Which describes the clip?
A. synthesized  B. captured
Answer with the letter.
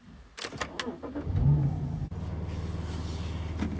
B